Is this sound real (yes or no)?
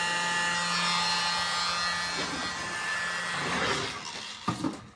yes